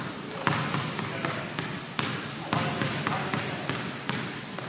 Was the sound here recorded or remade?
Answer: recorded